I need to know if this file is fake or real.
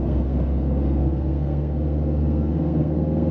fake